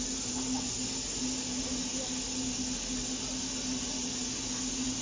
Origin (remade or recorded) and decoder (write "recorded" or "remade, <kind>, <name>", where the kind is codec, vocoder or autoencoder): recorded